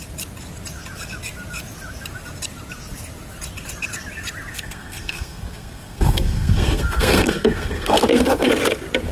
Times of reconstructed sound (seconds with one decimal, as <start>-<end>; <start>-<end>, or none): 4.5-8.5